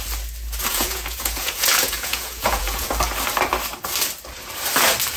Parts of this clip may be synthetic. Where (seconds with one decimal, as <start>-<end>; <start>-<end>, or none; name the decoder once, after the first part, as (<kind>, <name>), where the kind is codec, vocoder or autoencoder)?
0.7-2.9 (vocoder, Vocos)